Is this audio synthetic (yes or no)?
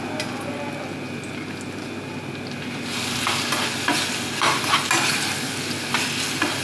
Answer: no